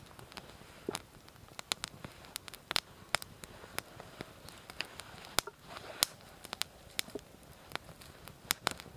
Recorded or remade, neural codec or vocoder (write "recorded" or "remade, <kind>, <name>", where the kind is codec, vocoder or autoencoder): recorded